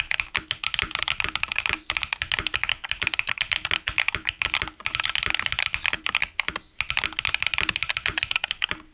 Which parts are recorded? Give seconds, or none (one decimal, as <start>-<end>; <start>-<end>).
0.0-8.9